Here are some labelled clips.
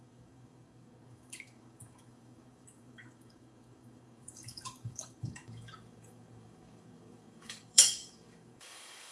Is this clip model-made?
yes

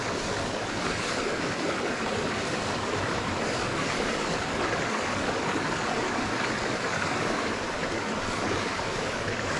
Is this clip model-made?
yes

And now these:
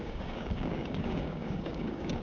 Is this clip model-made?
yes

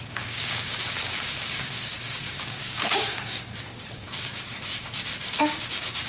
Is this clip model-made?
yes